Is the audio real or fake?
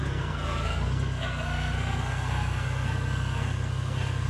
fake